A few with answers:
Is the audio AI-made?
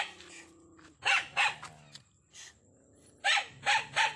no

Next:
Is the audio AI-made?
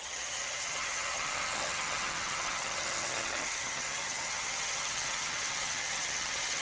yes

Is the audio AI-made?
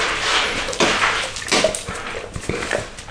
no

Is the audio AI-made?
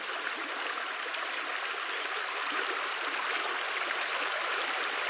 no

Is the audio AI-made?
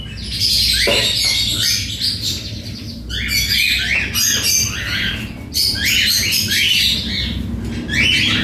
no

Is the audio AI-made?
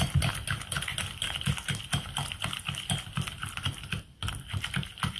no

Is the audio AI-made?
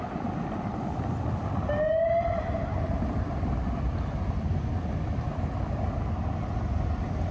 no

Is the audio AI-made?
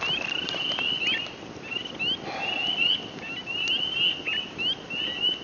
no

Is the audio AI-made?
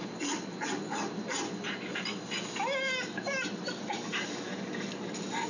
no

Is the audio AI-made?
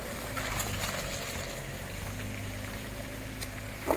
no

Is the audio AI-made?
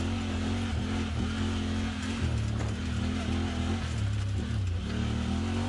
no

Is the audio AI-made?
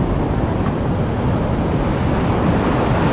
no